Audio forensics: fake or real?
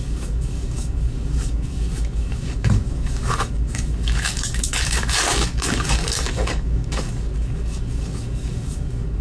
fake